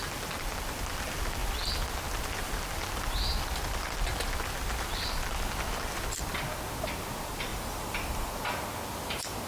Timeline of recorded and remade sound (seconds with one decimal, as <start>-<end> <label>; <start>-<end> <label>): 0.0-7.5 recorded; 7.5-8.3 remade; 8.3-9.5 recorded